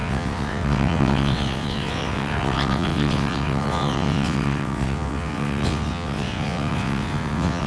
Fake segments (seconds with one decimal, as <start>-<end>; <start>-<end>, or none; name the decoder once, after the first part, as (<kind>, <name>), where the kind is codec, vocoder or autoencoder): 0.0-7.7 (vocoder, WaveNeXt)